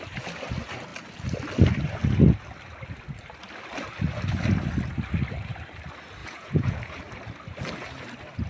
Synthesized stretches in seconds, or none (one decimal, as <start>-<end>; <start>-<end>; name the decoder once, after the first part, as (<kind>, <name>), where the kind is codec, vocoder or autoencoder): 6.2-7.0 (vocoder, Vocos)